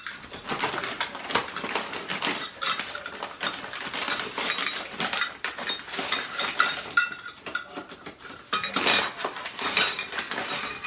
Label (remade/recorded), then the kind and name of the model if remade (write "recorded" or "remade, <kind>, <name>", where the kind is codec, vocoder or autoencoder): recorded